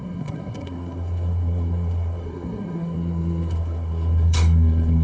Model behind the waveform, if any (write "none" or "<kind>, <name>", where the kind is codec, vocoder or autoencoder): codec, SNAC